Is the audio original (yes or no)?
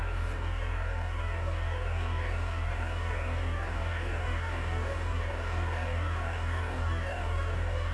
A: no